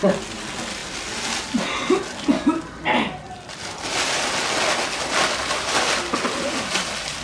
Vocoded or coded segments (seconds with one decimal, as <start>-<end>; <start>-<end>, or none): none